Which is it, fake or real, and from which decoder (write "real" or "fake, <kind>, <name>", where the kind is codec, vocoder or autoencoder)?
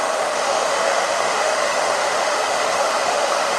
fake, autoencoder, DAC-VAE